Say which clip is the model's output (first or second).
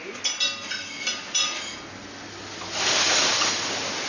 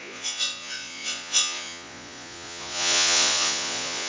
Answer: second